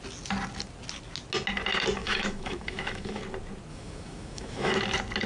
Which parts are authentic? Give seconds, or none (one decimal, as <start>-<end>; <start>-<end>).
0.0-2.0; 3.2-3.7; 4.7-5.3